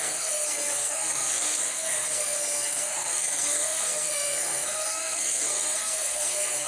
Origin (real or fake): fake